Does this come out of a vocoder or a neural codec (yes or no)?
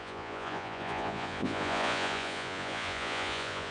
yes